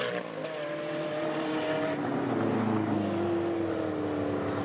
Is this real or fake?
real